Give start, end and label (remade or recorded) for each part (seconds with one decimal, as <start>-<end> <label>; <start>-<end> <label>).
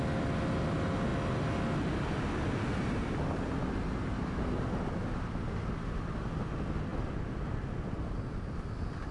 0.0-9.1 recorded